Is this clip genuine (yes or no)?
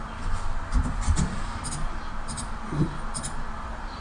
yes